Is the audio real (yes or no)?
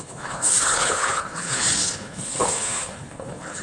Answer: no